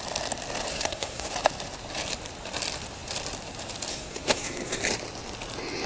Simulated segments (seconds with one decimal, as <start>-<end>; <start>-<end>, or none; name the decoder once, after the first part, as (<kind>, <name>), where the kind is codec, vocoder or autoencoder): 0.7-1.3 (codec, SNAC); 3.9-4.8